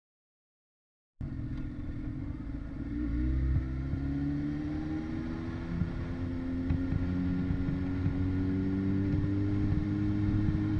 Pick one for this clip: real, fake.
real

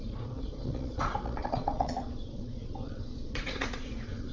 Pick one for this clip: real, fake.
fake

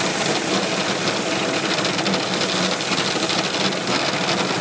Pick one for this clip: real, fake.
real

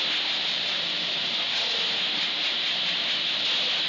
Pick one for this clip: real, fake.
real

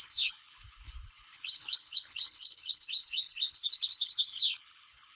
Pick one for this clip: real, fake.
fake